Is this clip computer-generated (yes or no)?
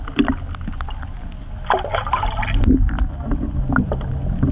no